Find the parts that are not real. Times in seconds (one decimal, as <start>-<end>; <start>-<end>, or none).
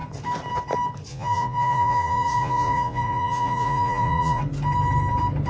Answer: 1.1-4.4